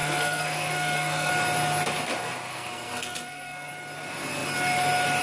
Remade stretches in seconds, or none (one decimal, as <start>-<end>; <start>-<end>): 0.0-1.3; 2.5-3.7